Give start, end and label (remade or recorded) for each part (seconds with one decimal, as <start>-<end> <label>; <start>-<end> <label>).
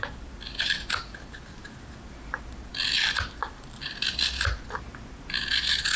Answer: 0.0-6.0 recorded